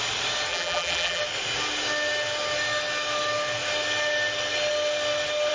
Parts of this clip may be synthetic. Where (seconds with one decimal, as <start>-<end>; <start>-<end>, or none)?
0.5-1.2